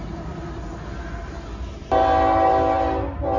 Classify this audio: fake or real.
real